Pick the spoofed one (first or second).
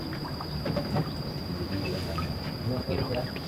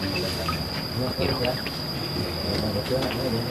first